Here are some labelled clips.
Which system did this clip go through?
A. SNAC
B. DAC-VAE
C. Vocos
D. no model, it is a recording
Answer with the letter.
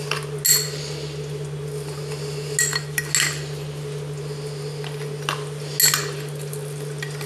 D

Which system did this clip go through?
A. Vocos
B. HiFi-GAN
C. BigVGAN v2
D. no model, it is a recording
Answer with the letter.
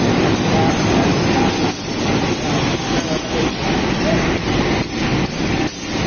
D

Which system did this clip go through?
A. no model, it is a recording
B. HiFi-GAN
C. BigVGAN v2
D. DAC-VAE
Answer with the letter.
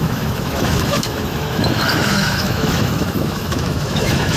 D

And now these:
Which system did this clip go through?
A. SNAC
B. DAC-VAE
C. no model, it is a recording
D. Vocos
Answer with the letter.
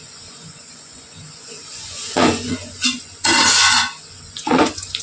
D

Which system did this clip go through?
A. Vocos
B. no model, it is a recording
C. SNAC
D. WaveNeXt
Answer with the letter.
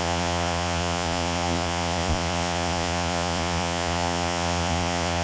A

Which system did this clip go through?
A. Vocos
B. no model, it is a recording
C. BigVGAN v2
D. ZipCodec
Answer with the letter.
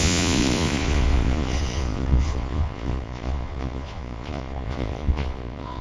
A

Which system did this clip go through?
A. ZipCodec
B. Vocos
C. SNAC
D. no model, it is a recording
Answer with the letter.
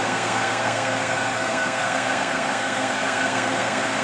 C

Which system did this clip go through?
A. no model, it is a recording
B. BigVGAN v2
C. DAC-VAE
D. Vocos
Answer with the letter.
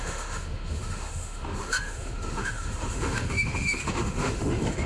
C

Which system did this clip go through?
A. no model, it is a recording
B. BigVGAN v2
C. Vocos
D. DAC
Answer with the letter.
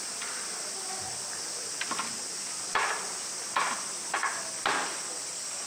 A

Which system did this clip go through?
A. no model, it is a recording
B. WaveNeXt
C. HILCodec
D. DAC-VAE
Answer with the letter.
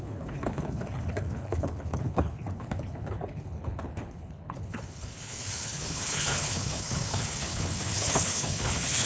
C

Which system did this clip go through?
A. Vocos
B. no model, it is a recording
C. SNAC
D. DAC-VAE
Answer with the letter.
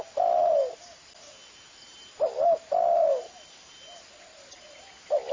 B